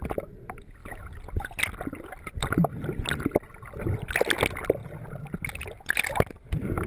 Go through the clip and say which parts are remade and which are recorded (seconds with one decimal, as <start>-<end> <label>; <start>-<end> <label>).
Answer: 0.0-6.9 recorded